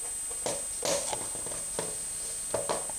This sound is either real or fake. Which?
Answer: real